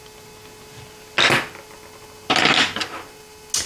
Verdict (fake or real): real